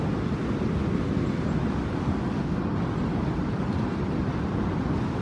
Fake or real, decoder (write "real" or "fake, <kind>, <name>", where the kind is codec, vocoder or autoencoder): real